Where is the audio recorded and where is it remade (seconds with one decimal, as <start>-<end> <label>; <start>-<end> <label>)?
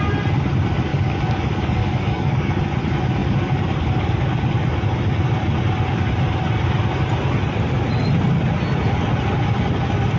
0.0-0.9 recorded; 0.9-2.6 remade; 2.6-10.2 recorded